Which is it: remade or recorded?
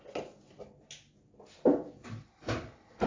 recorded